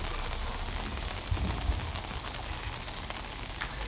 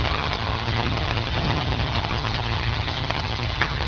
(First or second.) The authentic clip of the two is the first